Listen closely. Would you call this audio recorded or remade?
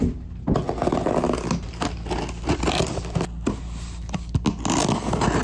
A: recorded